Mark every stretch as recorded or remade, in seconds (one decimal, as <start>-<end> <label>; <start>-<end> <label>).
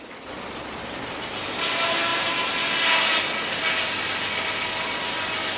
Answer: 0.0-5.6 recorded